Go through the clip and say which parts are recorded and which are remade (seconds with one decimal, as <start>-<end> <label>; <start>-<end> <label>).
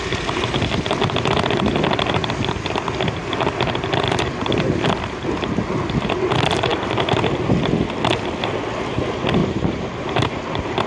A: 0.0-9.4 recorded; 9.4-10.4 remade; 10.4-10.9 recorded